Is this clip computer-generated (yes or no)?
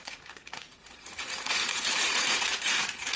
yes